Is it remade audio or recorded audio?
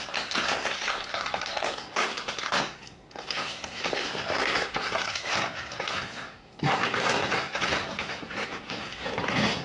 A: remade